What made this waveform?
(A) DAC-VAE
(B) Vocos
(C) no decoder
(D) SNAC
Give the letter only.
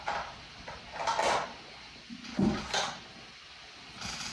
C